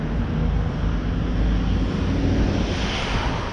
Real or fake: real